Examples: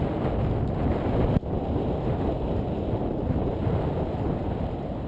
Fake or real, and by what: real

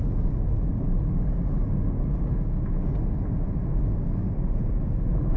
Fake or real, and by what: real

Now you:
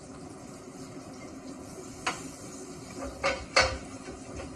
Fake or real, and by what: real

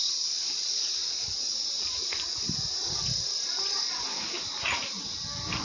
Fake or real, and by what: real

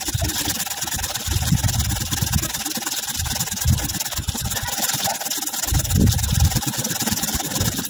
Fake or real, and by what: real